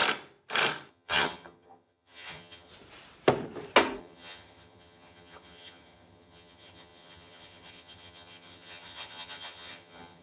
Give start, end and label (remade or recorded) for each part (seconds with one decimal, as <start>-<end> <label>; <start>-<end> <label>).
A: 0.0-0.9 recorded; 0.9-2.7 remade; 2.7-4.0 recorded; 4.0-10.2 remade